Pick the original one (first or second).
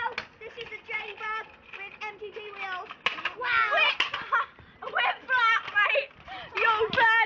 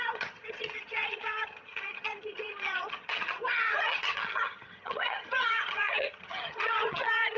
first